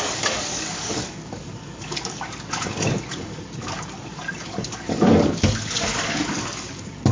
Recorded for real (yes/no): no